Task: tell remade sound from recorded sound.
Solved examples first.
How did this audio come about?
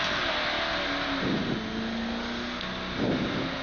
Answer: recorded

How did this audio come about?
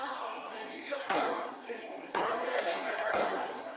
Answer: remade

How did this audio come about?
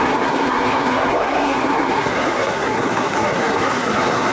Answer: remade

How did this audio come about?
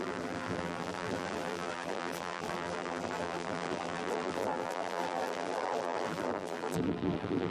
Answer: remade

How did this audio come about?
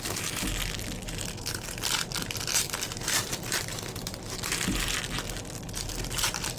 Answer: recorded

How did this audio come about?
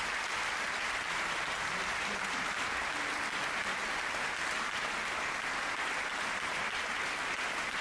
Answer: recorded